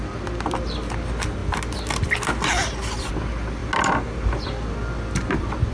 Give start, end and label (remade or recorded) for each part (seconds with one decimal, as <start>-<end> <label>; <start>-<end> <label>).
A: 0.0-5.7 recorded